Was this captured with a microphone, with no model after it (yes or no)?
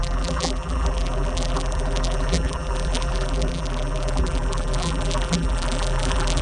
no